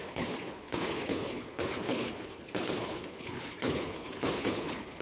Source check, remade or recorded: remade